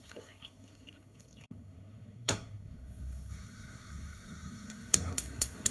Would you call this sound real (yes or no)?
no